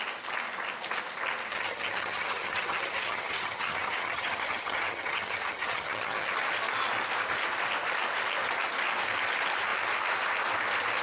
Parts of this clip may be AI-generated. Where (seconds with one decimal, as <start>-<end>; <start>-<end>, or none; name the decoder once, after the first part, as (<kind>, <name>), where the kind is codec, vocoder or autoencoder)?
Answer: 1.5-6.3 (vocoder, HiFi-GAN)